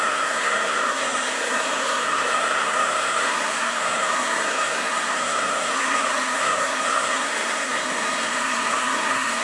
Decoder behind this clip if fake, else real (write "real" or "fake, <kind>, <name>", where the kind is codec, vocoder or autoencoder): fake, codec, SNAC